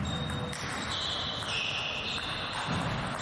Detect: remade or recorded recorded